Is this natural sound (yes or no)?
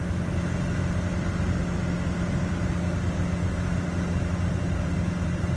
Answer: yes